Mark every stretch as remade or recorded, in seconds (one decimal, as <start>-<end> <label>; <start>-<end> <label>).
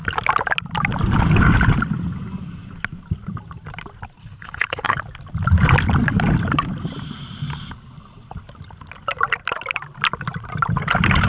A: 0.0-4.2 recorded; 4.2-5.0 remade; 5.0-11.3 recorded